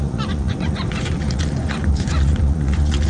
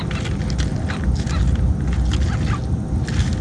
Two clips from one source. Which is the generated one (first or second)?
first